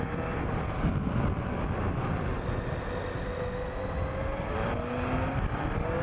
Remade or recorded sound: recorded